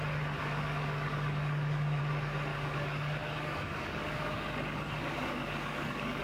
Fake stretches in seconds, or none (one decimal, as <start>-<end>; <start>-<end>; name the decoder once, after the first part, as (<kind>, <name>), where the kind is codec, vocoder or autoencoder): 0.4-2.0 (codec, DAC); 2.5-6.2